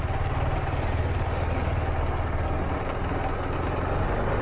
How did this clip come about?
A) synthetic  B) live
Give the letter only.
B